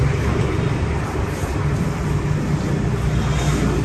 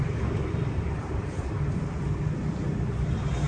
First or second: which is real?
first